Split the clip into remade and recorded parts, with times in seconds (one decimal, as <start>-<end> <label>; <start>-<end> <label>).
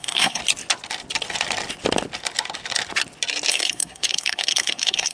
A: 0.0-0.4 remade; 0.4-3.5 recorded; 3.5-5.1 remade